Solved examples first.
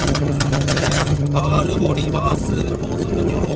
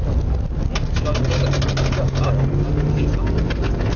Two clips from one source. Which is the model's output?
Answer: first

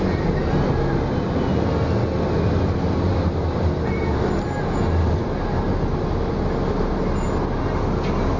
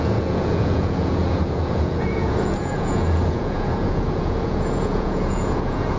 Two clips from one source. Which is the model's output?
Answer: second